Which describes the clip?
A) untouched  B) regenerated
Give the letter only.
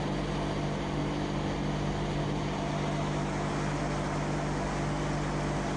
A